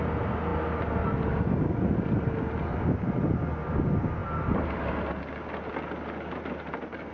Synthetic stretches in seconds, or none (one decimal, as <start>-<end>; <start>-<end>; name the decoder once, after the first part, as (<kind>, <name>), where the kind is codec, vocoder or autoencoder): none